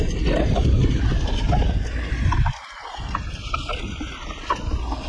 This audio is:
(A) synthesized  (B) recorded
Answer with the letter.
B